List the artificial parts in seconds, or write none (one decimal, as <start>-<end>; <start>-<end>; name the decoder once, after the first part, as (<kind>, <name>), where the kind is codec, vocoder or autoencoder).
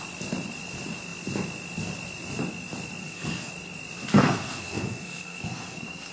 3.0-3.5 (codec, SNAC); 4.1-6.1